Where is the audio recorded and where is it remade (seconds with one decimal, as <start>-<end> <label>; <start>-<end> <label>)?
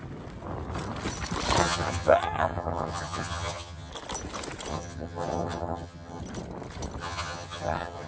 0.0-1.6 recorded; 1.6-3.9 remade; 3.9-4.7 recorded; 4.7-6.2 remade; 6.2-7.0 recorded; 7.0-8.1 remade